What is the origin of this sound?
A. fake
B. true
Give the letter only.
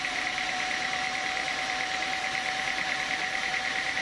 A